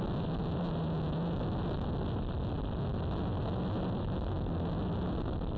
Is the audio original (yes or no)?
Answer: yes